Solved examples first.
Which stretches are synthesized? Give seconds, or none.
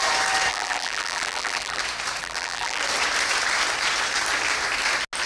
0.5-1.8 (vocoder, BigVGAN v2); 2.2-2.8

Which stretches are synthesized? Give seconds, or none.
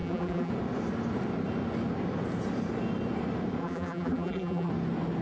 0.0-0.5 (vocoder, BigVGAN v2); 3.6-4.7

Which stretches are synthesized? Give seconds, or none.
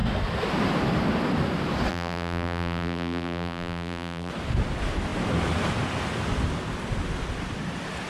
1.9-4.3 (vocoder, BigVGAN v2)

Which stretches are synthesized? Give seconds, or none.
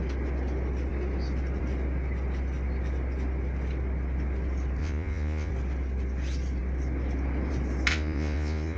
4.8-5.5 (vocoder, Vocos); 7.9-8.8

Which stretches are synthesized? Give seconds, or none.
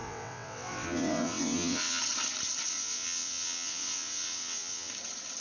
0.0-2.0 (vocoder, WaveNeXt); 2.7-4.9